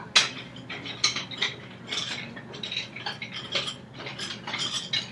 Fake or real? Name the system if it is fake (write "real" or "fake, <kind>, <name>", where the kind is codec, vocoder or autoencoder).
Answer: real